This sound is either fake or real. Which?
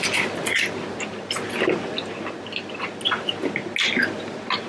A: real